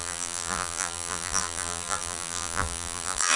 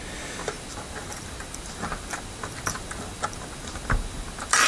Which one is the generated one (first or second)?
first